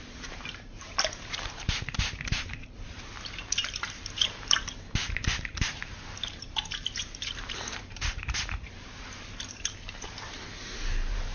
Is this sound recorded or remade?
remade